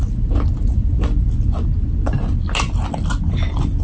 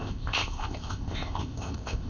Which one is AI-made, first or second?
second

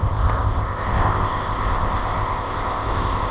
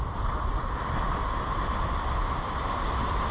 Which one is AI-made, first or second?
first